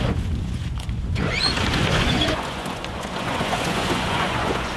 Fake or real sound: fake